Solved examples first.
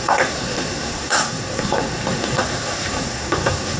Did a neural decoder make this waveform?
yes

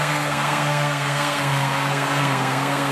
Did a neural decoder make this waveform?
yes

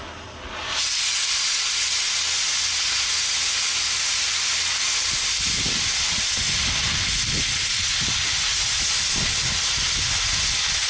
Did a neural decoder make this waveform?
no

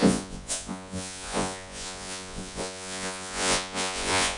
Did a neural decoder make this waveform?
yes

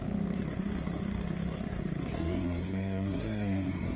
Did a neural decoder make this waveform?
yes